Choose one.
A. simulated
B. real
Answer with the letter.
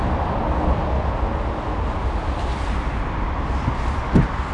B